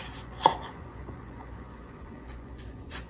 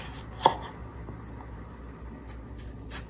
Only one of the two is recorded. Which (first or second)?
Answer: second